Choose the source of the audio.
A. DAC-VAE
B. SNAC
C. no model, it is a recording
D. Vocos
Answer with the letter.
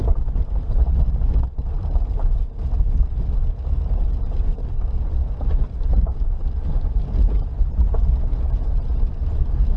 C